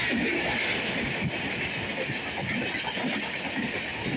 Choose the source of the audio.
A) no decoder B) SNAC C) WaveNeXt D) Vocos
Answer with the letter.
A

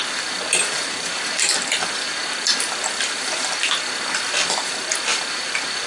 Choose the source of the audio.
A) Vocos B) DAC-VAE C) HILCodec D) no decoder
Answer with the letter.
D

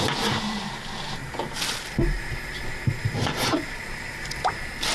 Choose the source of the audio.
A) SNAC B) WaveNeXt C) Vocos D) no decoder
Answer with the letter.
D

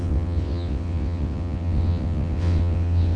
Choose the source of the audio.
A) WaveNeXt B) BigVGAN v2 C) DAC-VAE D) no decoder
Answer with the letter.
A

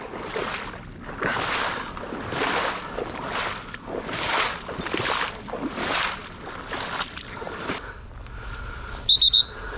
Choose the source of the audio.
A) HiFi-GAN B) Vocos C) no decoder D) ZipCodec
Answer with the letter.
C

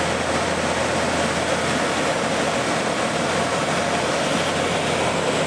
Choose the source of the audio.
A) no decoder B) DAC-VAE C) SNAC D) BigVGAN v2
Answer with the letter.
A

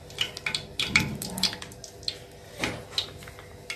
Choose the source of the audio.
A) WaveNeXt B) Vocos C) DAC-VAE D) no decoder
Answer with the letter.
D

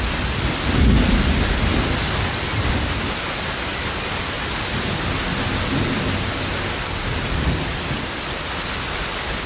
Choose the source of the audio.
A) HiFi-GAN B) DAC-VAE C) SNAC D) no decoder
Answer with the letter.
D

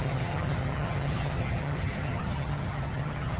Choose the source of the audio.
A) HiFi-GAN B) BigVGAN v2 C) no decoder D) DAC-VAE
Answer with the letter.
A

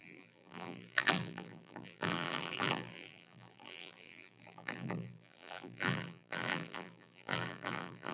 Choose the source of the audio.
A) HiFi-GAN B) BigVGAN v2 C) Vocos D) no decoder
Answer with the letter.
B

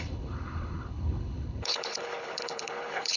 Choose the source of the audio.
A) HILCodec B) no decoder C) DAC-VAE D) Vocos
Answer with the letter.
A